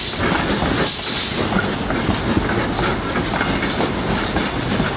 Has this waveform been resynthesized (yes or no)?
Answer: no